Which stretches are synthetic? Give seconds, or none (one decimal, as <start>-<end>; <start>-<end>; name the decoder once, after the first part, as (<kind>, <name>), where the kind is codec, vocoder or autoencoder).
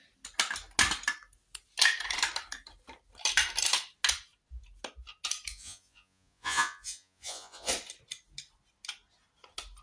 5.5-7.7 (vocoder, Vocos)